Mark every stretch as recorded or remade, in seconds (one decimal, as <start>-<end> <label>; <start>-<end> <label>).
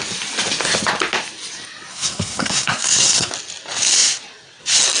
0.0-1.9 recorded; 1.9-3.3 remade; 3.3-5.0 recorded